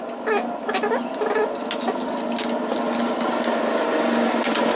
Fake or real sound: real